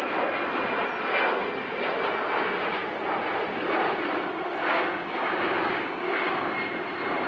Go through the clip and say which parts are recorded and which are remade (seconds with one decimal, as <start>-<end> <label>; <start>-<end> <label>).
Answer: 0.0-4.7 recorded; 4.7-6.5 remade; 6.5-7.3 recorded